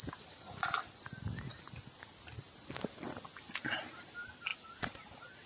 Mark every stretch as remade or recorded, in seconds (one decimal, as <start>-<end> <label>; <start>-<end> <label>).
0.0-5.5 recorded

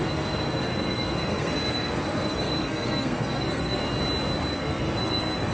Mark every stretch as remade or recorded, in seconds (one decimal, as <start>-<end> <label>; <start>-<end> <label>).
0.0-3.8 remade; 3.8-4.5 recorded; 4.5-5.5 remade

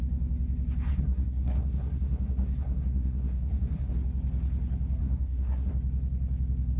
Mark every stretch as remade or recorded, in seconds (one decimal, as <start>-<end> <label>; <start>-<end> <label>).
0.0-0.9 recorded; 0.9-3.9 remade; 3.9-5.0 recorded; 5.0-5.7 remade; 5.7-6.8 recorded

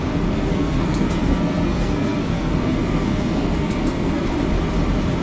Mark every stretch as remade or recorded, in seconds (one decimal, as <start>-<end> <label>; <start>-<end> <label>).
0.0-4.2 remade; 4.2-5.2 recorded

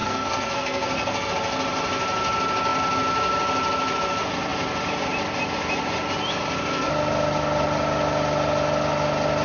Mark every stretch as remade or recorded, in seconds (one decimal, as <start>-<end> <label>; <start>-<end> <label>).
0.0-1.3 remade; 1.3-9.4 recorded